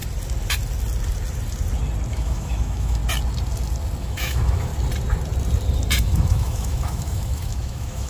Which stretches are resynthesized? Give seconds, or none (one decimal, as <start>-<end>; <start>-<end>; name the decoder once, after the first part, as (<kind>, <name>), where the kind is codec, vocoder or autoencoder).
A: 2.1-3.0 (autoencoder, DAC-VAE); 4.0-4.7; 6.0-8.1